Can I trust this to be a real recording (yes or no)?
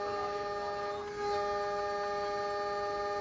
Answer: yes